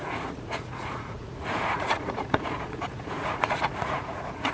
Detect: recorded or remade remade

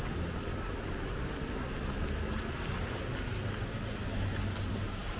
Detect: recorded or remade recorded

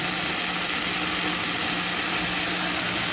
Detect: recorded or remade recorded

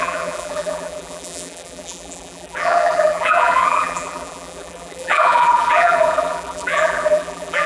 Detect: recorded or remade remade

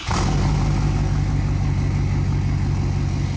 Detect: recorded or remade recorded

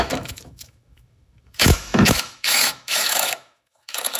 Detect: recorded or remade remade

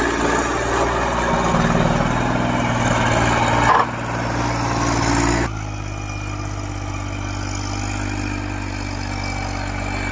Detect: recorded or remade recorded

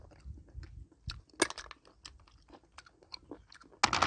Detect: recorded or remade recorded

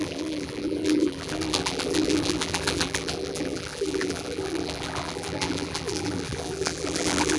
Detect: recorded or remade remade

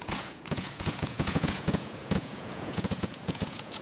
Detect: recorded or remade remade